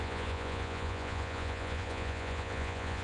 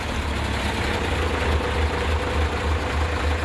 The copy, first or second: first